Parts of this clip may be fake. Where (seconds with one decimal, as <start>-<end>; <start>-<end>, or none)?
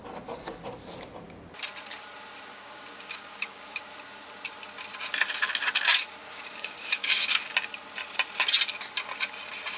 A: 2.5-3.8; 6.2-7.4